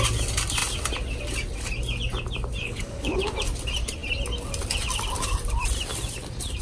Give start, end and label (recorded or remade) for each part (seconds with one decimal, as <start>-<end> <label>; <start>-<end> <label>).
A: 0.0-2.6 recorded; 2.6-3.2 remade; 3.2-6.6 recorded